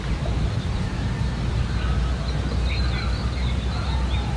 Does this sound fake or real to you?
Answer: real